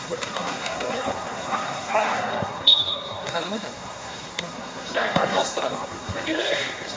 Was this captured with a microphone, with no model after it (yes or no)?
no